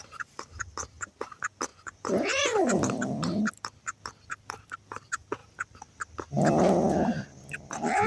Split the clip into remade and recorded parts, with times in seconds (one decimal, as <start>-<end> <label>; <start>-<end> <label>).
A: 0.0-1.7 recorded; 1.7-2.8 remade; 2.8-8.1 recorded